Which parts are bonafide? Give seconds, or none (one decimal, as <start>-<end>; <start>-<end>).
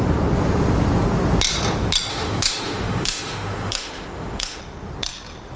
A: 0.0-2.1; 4.6-5.6